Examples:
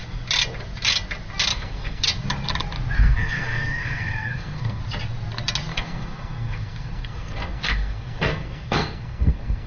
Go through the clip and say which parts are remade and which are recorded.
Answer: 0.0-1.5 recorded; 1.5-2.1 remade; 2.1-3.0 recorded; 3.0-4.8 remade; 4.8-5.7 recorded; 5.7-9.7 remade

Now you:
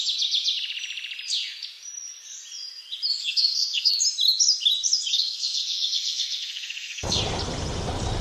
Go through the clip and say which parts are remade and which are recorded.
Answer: 0.0-3.2 recorded; 3.2-4.0 remade; 4.0-5.1 recorded; 5.1-7.2 remade; 7.2-8.2 recorded

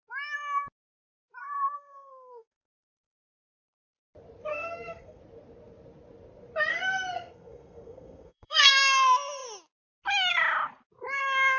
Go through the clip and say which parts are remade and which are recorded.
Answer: 0.0-1.4 recorded; 1.4-3.6 remade; 3.6-4.5 recorded; 4.5-5.2 remade; 5.2-6.7 recorded; 6.7-8.7 remade; 8.7-11.6 recorded

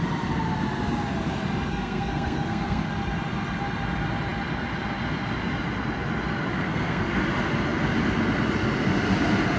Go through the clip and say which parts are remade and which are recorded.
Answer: 0.0-1.7 recorded; 1.7-2.9 remade; 2.9-6.5 recorded; 6.5-7.1 remade; 7.1-9.6 recorded